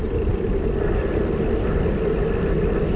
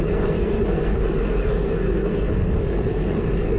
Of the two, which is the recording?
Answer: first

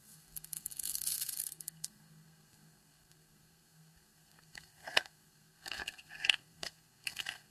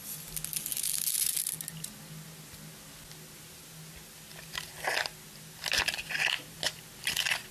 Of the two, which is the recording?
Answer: second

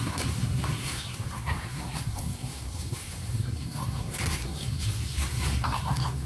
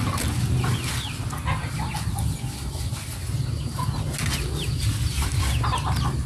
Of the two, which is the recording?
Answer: second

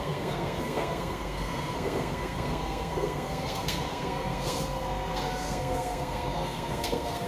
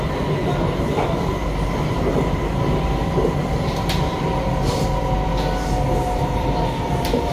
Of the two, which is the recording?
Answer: second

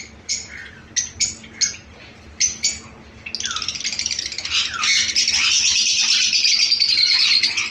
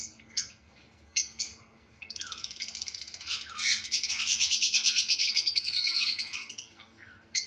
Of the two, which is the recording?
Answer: first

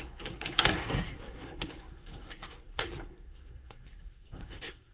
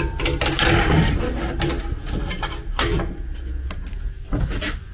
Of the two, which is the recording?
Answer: second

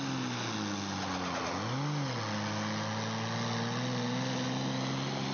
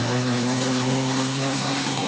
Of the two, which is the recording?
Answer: first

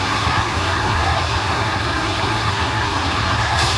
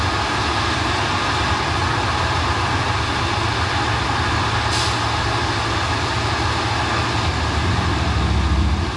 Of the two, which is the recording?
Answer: second